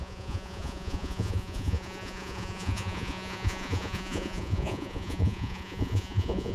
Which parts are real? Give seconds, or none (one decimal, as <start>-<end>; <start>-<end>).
none